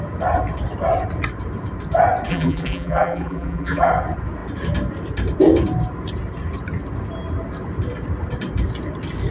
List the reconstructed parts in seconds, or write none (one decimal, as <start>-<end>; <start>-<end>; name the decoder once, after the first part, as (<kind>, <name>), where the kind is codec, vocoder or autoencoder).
2.3-3.9 (vocoder, BigVGAN v2)